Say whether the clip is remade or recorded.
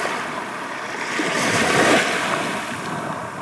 recorded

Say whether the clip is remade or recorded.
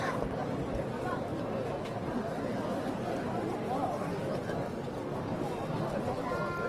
recorded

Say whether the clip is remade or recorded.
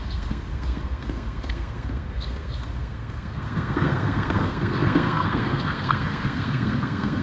remade